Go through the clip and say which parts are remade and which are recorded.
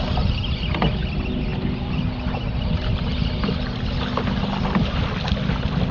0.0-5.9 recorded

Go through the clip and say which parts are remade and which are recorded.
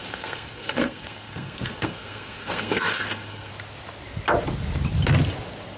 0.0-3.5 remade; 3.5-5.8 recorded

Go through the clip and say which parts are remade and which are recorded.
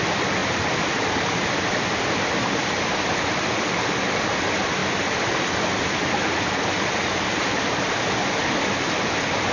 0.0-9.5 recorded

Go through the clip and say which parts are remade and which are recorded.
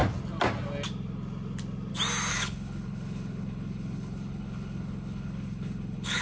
0.0-2.3 recorded; 2.3-6.2 remade